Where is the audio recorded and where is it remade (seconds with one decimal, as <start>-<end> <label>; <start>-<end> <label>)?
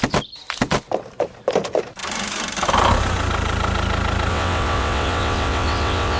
0.0-4.3 recorded; 4.3-6.2 remade